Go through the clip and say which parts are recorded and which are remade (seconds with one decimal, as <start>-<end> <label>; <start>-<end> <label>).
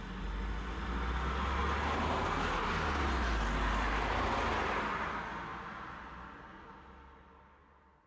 0.0-8.1 recorded